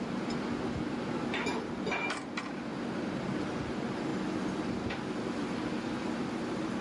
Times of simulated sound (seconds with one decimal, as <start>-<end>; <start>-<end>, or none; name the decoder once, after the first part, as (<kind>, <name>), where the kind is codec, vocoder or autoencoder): none